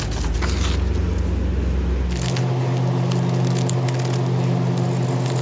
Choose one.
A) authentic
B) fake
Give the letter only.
A